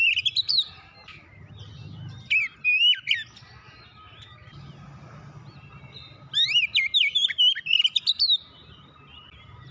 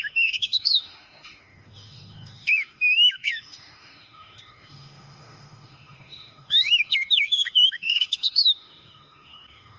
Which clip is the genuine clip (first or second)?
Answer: first